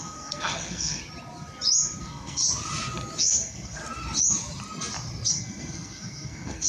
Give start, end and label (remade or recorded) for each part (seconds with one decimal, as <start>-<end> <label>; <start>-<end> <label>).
0.0-1.0 remade; 1.0-2.0 recorded; 2.0-2.4 remade; 2.4-3.2 recorded; 3.2-3.8 remade; 3.8-5.3 recorded; 5.3-6.7 remade